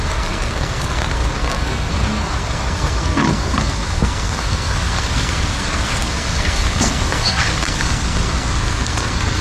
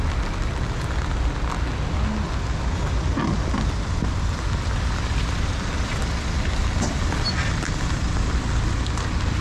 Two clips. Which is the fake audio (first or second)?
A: first